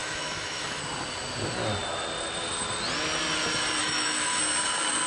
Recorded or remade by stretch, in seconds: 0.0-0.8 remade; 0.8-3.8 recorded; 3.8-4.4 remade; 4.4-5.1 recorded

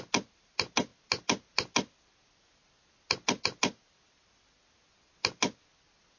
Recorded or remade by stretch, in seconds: 0.0-6.2 recorded

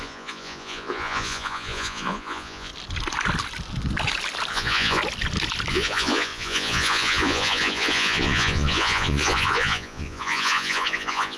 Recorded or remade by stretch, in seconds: 0.0-2.7 remade; 2.7-4.5 recorded; 4.5-5.0 remade; 5.0-5.7 recorded; 5.7-11.4 remade

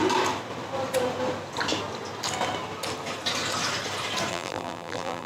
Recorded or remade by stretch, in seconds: 0.0-4.3 recorded; 4.3-5.3 remade

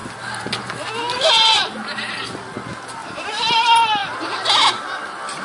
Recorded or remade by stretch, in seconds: 0.0-5.4 recorded

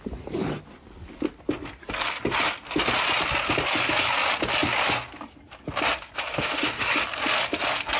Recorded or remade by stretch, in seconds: 0.0-6.3 recorded; 6.3-6.9 remade; 6.9-8.0 recorded